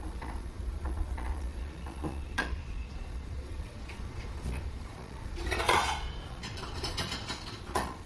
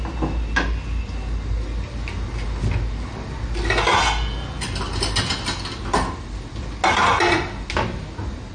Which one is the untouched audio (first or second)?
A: second